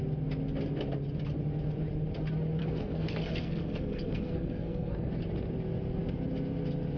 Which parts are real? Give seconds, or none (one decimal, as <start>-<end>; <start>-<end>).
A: 0.0-2.6; 5.1-7.0